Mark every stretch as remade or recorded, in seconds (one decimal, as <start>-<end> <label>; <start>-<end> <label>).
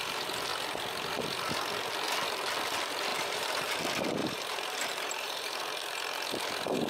0.0-3.1 recorded; 3.1-3.7 remade; 3.7-4.2 recorded; 4.2-5.6 remade; 5.6-6.9 recorded